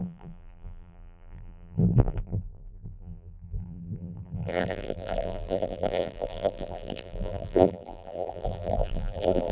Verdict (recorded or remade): remade